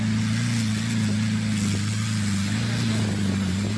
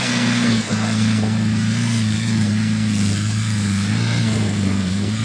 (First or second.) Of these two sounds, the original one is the first